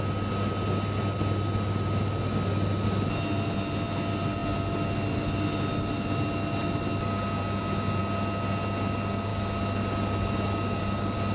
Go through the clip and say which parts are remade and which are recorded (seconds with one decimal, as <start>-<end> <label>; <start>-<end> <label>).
0.0-11.3 recorded